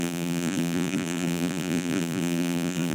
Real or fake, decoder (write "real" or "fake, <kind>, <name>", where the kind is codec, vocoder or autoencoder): fake, vocoder, BigVGAN v2